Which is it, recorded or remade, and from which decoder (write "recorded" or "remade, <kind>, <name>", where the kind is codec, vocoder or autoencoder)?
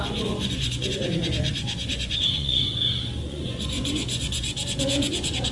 remade, vocoder, Vocos